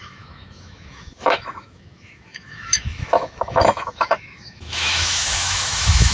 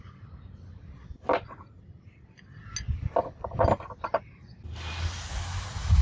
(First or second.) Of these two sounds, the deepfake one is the first